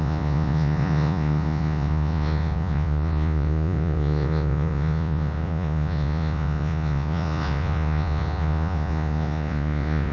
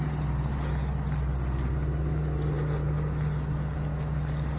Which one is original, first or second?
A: second